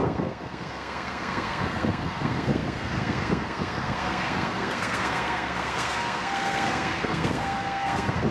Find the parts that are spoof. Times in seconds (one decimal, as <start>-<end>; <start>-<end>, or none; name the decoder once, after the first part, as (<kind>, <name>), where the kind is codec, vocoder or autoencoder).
0.0-8.3 (codec, SNAC)